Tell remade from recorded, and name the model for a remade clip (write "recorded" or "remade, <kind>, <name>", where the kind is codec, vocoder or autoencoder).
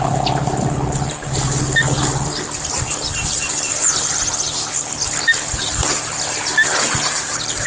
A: recorded